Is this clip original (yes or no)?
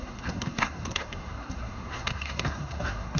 no